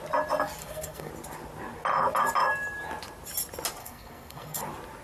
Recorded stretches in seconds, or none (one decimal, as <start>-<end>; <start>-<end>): 0.0-0.6; 1.1-3.8; 4.6-5.0